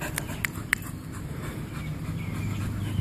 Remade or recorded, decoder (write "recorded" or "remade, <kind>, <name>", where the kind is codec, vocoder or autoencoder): recorded